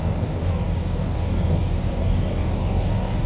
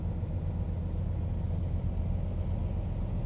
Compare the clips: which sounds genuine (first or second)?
second